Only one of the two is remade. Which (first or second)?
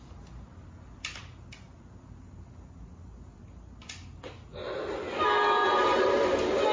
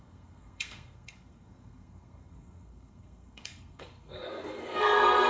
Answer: second